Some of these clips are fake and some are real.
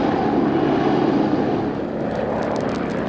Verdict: real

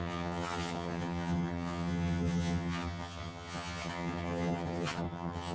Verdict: fake